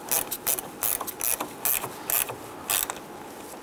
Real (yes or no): yes